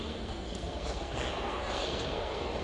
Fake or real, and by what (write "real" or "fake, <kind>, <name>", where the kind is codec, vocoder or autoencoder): fake, codec, SNAC